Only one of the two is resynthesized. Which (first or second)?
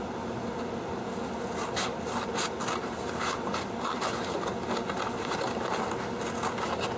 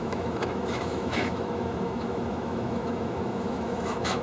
second